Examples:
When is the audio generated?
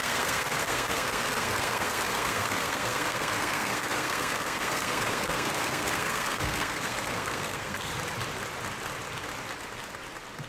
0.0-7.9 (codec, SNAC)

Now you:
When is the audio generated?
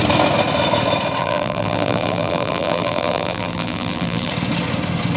1.2-4.3 (vocoder, BigVGAN v2)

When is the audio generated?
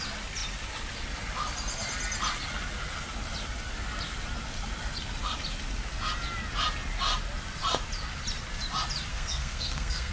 9.1-10.1 (codec, SNAC)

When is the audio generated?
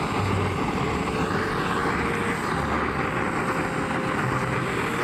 none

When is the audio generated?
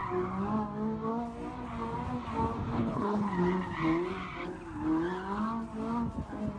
2.7-3.3 (codec, HILCodec)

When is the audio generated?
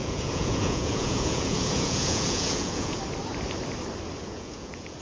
0.0-3.0 (vocoder, Vocos); 4.3-5.0